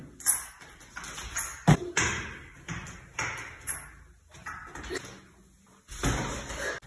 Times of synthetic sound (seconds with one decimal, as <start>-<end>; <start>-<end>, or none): none